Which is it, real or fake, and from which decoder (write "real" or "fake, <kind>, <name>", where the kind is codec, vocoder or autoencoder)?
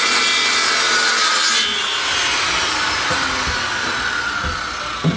real